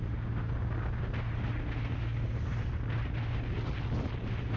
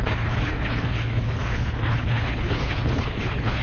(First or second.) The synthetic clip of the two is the second